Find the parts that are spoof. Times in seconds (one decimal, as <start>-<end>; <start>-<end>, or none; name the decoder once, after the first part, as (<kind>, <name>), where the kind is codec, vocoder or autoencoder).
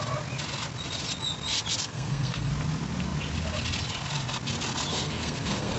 1.8-2.5 (codec, SNAC); 4.9-5.8